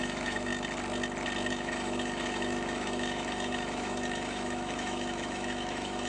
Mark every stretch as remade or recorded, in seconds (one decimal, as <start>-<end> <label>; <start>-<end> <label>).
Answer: 0.0-0.5 remade; 0.5-1.5 recorded; 1.5-6.1 remade